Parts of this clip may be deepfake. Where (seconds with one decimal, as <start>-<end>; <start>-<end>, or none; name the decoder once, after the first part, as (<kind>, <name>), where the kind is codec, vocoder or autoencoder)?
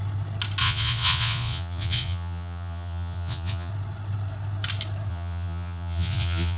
0.6-3.7 (vocoder, Vocos); 5.1-6.6